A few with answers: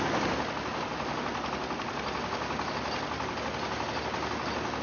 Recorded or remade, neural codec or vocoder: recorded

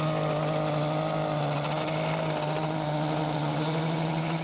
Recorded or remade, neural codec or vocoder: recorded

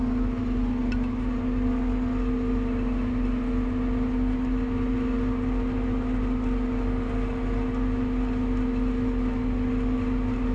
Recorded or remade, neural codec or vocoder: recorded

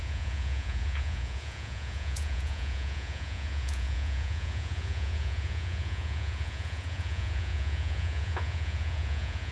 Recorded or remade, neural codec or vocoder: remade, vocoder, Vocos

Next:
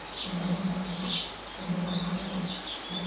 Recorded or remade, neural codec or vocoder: recorded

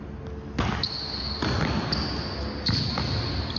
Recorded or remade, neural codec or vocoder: recorded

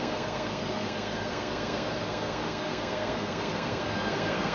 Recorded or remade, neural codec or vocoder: remade, codec, SNAC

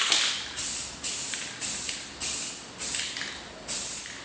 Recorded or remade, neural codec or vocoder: recorded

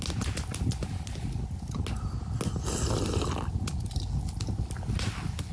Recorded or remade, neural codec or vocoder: recorded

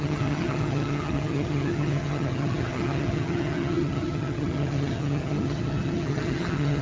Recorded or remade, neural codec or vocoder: remade, vocoder, HiFi-GAN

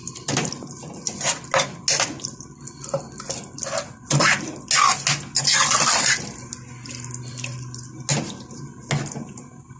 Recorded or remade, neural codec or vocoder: recorded